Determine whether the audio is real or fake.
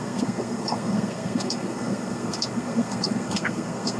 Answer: fake